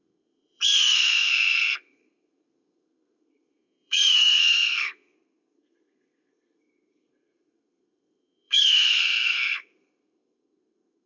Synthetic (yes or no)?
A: yes